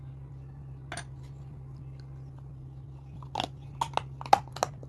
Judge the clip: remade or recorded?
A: recorded